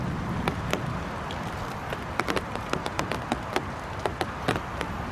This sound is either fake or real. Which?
real